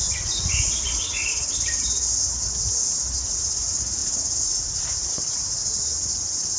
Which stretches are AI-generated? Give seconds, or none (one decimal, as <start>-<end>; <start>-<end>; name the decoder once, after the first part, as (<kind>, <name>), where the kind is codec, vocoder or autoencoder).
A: 0.0-1.3 (vocoder, Vocos); 3.1-5.6